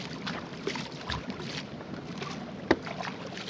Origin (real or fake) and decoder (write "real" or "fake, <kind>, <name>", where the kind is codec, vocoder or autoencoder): real